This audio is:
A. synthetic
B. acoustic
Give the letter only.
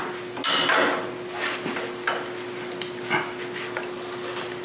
B